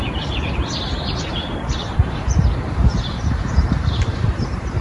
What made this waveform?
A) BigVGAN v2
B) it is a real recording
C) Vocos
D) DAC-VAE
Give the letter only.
A